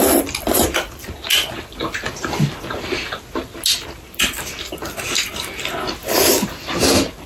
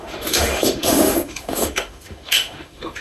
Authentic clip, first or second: first